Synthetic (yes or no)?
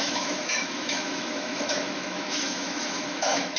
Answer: yes